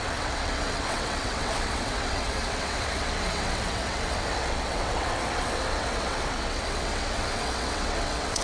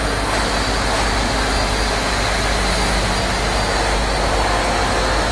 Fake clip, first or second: first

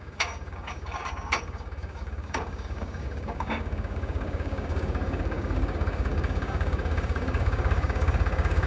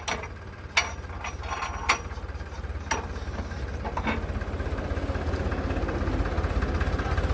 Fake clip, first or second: first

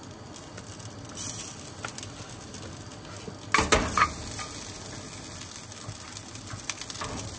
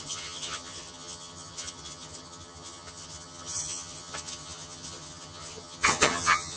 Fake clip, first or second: second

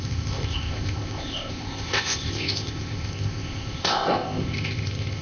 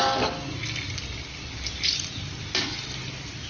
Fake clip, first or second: first